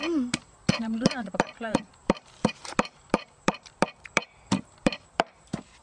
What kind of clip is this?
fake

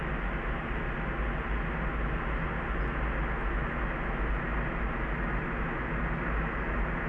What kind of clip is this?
real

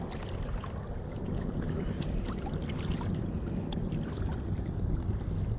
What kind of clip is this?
real